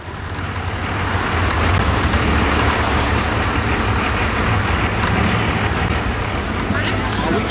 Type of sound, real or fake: real